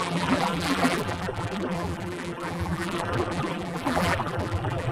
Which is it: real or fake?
fake